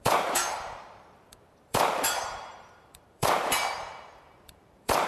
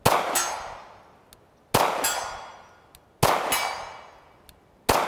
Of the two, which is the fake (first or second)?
first